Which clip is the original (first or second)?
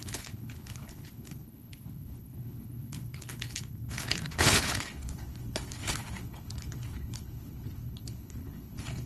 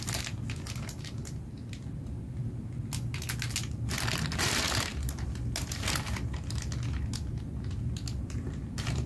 second